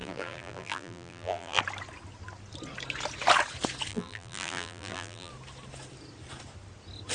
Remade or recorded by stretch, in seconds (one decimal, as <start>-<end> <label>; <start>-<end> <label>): 0.0-1.6 remade; 1.6-3.9 recorded; 3.9-5.3 remade; 5.3-7.1 recorded